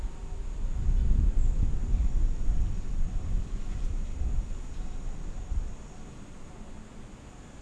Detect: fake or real real